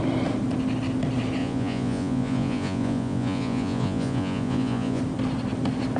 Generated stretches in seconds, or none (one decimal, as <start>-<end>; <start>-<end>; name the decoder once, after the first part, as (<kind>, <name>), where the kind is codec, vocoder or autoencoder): 1.4-5.0 (vocoder, Vocos)